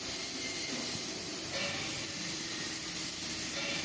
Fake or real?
fake